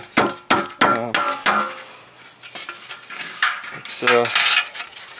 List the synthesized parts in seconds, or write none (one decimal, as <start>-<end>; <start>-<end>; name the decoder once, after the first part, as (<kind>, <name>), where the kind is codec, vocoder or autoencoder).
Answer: 2.8-3.6 (codec, DAC)